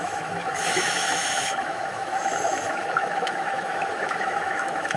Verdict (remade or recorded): remade